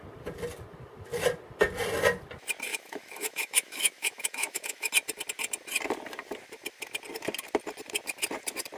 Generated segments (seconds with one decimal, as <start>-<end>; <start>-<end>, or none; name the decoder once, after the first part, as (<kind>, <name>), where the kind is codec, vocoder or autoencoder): 2.7-4.9 (autoencoder, DAC-VAE)